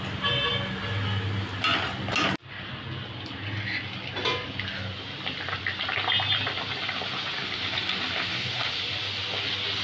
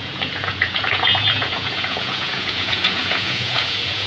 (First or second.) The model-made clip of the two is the second